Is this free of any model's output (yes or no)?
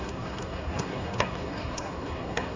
no